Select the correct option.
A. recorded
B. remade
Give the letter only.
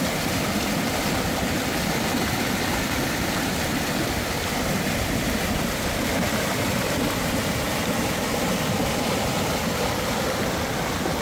A